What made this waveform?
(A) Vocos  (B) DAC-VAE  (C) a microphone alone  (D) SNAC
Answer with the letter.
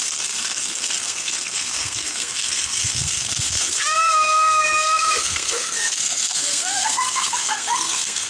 D